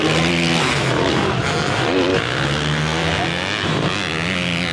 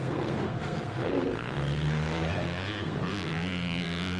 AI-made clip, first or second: second